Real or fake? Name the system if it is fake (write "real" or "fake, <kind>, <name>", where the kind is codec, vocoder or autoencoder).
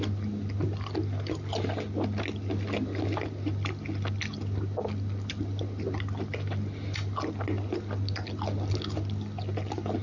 real